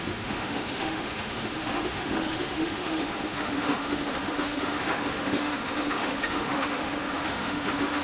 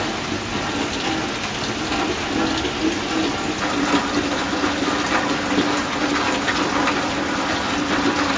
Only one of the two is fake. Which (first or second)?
first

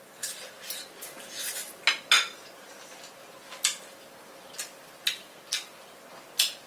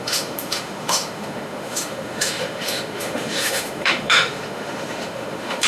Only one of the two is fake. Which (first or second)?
second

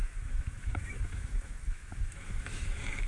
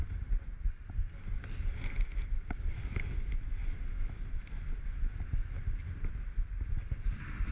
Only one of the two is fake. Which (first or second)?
first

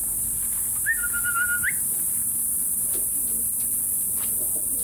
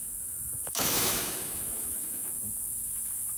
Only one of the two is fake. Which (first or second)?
second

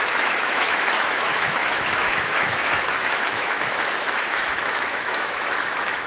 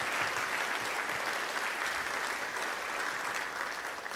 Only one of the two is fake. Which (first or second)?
first